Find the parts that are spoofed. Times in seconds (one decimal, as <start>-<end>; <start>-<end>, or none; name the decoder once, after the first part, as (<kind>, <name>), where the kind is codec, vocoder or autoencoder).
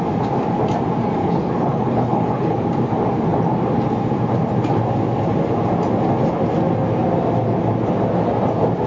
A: 1.2-2.6 (codec, HILCodec)